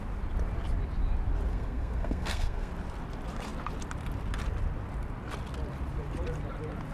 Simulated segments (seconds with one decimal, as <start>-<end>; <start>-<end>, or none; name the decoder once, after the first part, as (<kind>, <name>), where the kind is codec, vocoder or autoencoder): 1.5-2.7 (codec, SNAC)

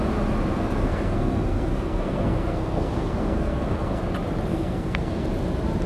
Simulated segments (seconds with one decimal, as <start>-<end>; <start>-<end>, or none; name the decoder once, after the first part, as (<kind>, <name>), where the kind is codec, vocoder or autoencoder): 0.5-4.0 (codec, SNAC); 4.5-5.3

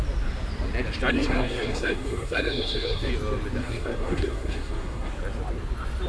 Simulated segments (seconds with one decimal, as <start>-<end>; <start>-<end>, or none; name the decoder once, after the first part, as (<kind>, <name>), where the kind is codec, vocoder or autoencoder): 1.1-3.1 (codec, SNAC); 3.6-5.1

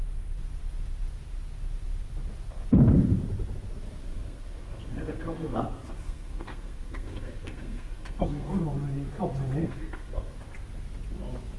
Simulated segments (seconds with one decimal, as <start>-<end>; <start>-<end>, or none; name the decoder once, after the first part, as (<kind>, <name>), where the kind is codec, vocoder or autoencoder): 4.0-8.5 (codec, SNAC); 9.6-10.3